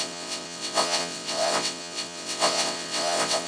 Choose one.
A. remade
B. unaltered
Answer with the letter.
A